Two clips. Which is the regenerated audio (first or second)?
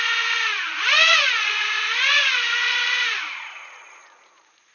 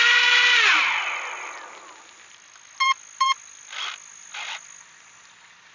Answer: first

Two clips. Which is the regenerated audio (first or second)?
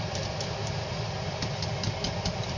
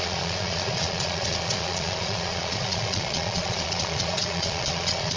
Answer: second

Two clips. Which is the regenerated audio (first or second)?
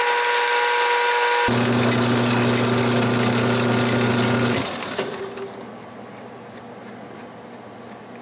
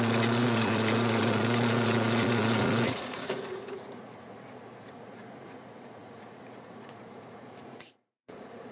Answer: second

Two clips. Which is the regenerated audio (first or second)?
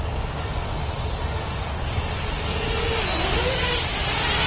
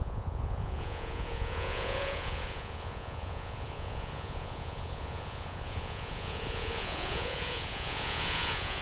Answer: second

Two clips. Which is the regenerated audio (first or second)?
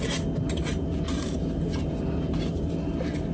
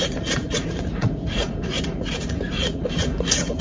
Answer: second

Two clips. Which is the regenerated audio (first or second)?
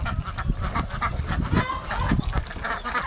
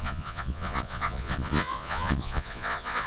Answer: second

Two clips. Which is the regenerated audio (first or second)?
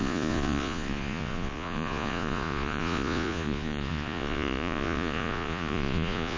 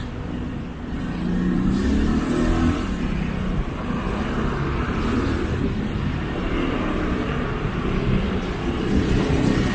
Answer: first